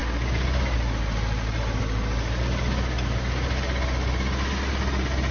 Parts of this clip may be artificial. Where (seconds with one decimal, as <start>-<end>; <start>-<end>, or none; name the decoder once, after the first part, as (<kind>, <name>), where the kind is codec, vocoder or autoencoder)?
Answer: none